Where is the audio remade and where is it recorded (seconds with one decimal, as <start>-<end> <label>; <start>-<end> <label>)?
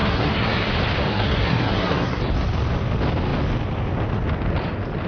0.0-0.7 remade; 0.7-1.1 recorded; 1.1-2.2 remade; 2.2-5.1 recorded